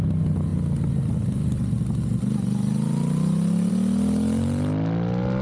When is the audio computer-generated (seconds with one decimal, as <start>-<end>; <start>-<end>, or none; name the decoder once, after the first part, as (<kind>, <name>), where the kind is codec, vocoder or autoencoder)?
none